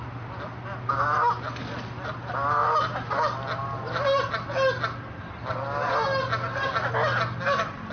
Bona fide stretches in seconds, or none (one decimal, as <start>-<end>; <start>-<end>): 0.0-7.9